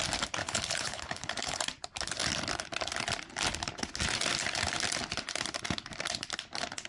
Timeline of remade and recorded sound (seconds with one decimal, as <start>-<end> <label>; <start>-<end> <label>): 0.0-0.4 recorded; 0.4-1.6 remade; 1.6-6.9 recorded